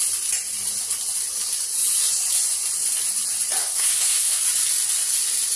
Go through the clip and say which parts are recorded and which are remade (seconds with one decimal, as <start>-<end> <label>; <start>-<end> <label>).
0.0-3.6 recorded; 3.6-4.4 remade; 4.4-5.6 recorded